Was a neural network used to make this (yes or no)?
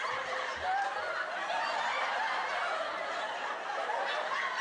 no